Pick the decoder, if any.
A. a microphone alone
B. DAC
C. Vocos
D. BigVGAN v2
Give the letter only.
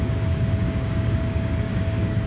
B